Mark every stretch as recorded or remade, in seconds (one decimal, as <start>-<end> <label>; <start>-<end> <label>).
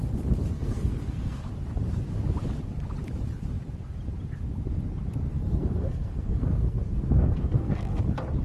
0.0-0.5 recorded; 0.5-1.4 remade; 1.4-5.3 recorded; 5.3-8.0 remade; 8.0-8.4 recorded